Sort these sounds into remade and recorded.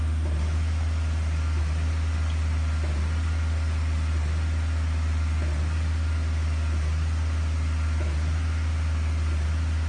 recorded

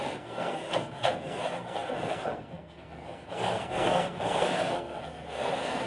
remade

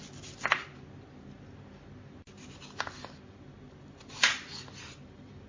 recorded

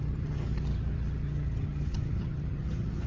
remade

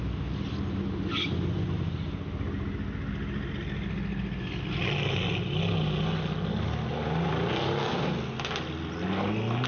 recorded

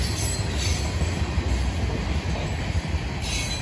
recorded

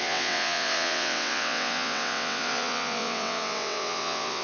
remade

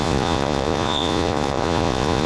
remade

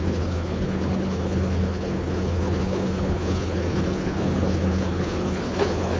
remade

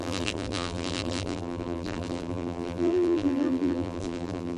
remade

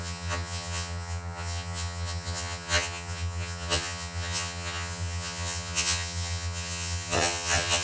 remade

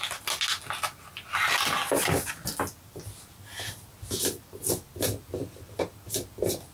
recorded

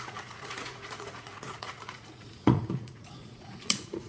remade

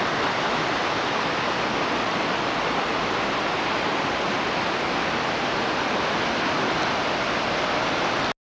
recorded